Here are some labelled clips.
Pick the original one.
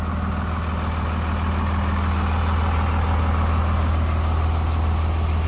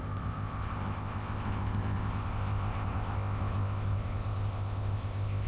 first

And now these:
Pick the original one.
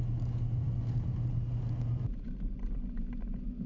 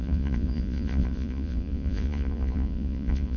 first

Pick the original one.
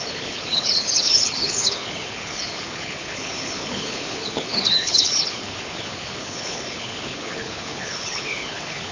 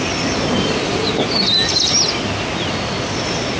second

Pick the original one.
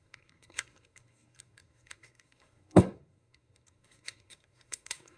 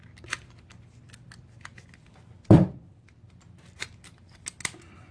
second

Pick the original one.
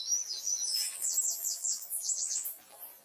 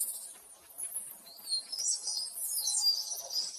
second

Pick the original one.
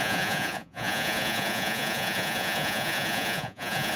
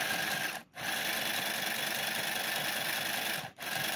second